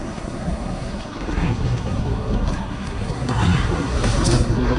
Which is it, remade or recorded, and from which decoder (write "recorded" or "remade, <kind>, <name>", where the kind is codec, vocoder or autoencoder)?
remade, codec, SNAC